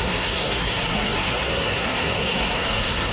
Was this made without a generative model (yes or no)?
no